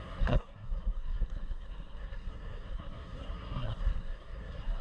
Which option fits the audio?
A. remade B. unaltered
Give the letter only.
A